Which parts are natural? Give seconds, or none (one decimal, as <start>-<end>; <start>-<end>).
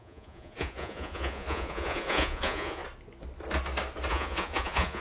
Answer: 2.8-4.1